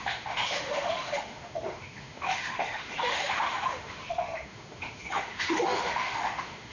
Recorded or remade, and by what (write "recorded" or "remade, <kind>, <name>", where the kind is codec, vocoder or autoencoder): remade, autoencoder, DAC-VAE